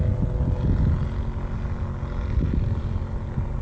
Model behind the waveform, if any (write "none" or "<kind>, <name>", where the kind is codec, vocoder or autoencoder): none